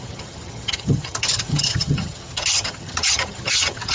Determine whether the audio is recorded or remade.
remade